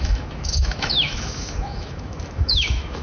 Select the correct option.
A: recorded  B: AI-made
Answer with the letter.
B